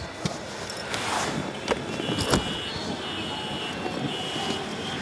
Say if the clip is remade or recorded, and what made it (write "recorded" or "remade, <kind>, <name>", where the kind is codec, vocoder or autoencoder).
recorded